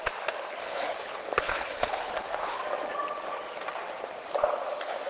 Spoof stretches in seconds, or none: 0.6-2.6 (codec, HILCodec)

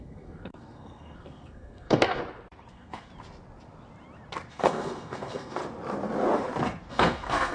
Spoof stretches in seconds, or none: 0.0-2.2 (codec, SNAC); 2.7-3.1; 4.5-5.6; 6.9-7.5

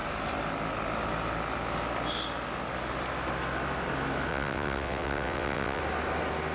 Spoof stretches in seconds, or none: 4.3-5.8 (vocoder, WaveNeXt)